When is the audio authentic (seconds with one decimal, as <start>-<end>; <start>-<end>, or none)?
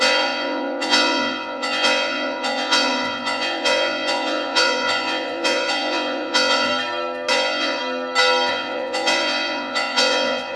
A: 6.7-7.3; 7.8-8.5